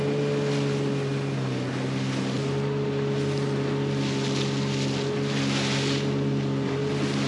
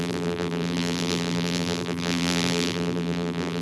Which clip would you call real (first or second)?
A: first